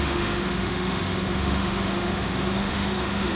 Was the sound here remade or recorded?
remade